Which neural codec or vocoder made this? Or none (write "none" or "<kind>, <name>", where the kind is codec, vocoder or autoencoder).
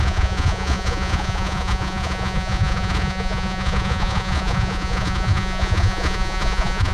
vocoder, Vocos